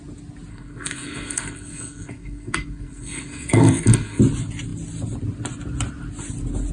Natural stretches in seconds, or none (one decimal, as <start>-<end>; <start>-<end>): 0.0-0.5; 4.2-6.7